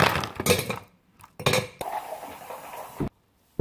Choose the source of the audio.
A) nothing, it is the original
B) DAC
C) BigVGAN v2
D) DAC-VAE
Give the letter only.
A